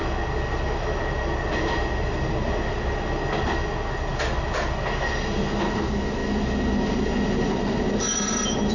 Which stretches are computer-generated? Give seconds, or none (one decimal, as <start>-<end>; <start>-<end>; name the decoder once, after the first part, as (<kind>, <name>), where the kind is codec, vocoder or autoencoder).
none